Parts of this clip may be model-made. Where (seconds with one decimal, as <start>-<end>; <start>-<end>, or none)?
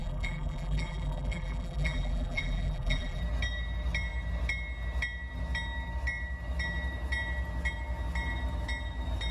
0.0-3.2